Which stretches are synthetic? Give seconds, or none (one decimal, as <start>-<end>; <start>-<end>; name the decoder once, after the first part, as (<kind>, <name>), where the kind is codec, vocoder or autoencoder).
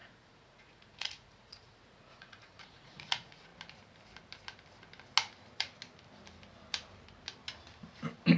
0.0-3.5 (vocoder, Vocos)